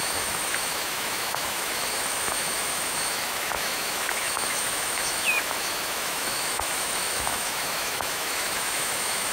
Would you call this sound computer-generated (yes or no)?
yes